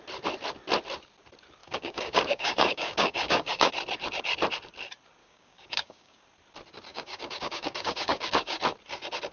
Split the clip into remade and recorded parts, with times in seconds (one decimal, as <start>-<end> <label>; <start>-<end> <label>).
0.0-1.6 recorded; 1.6-3.7 remade; 3.7-5.2 recorded; 5.2-6.2 remade; 6.2-6.9 recorded; 6.9-8.6 remade; 8.6-9.3 recorded